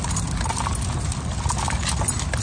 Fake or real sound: real